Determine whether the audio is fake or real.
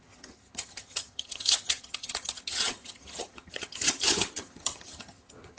fake